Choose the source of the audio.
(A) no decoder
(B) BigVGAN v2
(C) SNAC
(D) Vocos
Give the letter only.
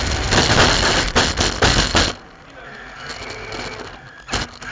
A